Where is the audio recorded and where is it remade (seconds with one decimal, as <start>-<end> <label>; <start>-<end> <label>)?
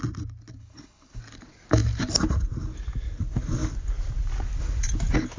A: 0.0-0.6 recorded; 0.6-1.2 remade; 1.2-5.4 recorded